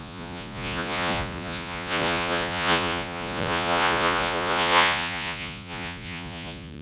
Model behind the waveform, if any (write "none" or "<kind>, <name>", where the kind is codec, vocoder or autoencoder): vocoder, Vocos